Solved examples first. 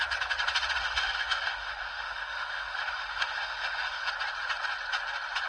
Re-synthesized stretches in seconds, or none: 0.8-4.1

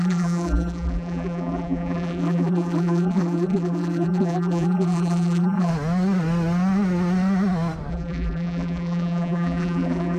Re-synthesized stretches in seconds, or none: 0.0-5.7; 7.9-10.2

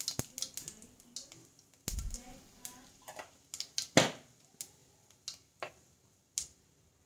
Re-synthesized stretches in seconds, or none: none

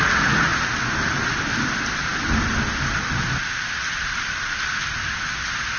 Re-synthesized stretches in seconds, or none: none

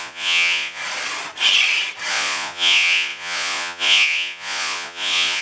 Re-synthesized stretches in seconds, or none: 0.0-0.8; 2.1-5.4

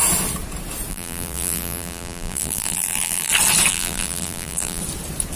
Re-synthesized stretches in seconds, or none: 0.9-3.3; 3.7-4.8

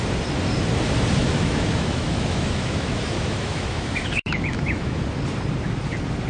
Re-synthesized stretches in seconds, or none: 1.2-5.0